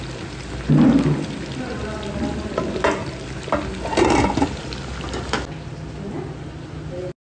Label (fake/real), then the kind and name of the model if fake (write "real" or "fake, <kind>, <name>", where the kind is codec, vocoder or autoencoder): real